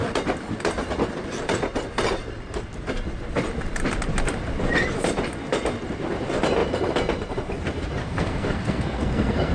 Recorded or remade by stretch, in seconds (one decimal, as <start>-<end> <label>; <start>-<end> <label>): 0.0-8.0 recorded; 8.0-9.5 remade